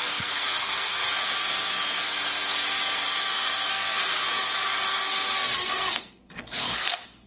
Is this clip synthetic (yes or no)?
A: yes